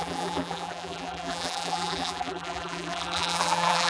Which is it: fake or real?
fake